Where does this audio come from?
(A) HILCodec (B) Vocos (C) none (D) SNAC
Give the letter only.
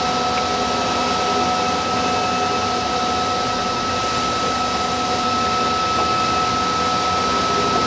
C